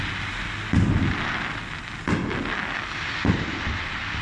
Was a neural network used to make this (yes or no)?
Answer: no